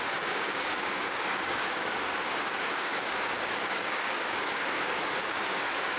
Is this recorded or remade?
remade